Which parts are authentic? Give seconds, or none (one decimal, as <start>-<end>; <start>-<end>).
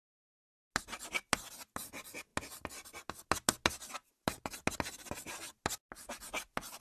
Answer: 0.0-6.8